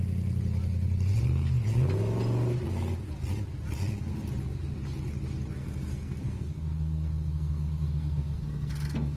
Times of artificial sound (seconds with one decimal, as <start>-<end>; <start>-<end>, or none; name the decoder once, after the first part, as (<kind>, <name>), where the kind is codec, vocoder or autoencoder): 5.6-9.2 (codec, SNAC)